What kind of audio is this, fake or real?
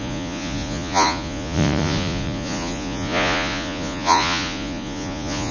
fake